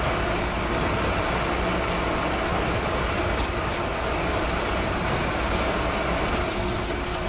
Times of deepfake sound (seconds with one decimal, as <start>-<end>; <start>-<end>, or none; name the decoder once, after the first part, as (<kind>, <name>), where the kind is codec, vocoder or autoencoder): 2.5-4.3 (vocoder, BigVGAN v2)